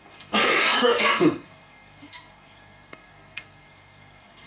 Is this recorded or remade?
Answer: remade